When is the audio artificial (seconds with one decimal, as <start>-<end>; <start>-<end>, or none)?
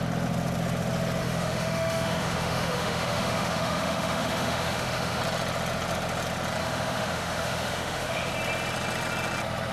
1.2-5.2; 6.6-8.3